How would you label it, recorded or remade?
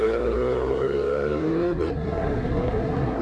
remade